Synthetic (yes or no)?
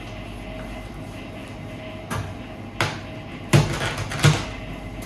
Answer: no